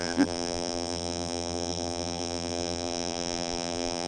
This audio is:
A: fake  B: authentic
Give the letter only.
A